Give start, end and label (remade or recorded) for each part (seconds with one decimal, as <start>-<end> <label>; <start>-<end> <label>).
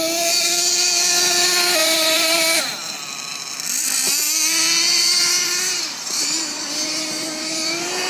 0.0-1.8 recorded; 1.8-2.6 remade; 2.6-4.9 recorded; 4.9-8.1 remade